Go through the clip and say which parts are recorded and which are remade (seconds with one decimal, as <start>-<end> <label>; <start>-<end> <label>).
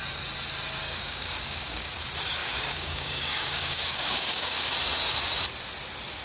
0.0-0.8 recorded; 0.8-1.9 remade; 1.9-2.4 recorded; 2.4-4.7 remade; 4.7-6.2 recorded